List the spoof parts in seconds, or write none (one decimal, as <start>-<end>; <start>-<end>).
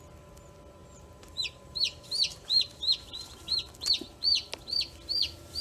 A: 0.8-3.7